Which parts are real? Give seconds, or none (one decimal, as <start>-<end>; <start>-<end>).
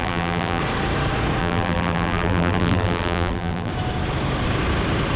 0.6-1.4; 3.7-5.2